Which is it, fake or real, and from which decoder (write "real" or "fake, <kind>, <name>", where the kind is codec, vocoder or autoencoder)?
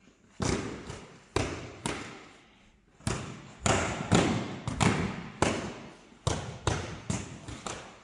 real